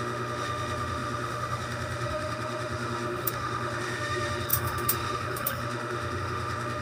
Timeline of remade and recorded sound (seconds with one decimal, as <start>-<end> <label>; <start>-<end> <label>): 0.0-6.8 remade